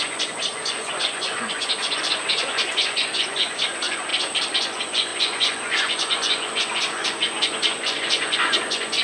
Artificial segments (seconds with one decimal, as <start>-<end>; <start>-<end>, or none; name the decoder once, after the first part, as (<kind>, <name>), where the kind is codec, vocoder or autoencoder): 0.0-4.1 (vocoder, Vocos); 4.6-9.0